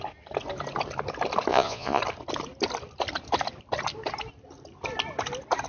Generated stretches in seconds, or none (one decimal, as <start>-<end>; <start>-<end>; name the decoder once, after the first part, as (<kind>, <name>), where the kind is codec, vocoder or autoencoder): 1.5-2.0 (vocoder, Vocos)